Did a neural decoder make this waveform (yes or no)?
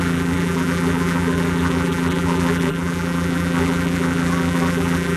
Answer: yes